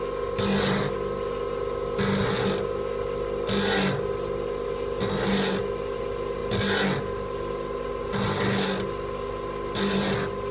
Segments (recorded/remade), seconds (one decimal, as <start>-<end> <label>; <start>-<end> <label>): 0.0-10.5 recorded